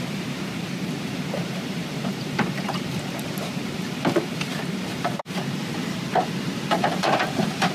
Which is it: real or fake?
fake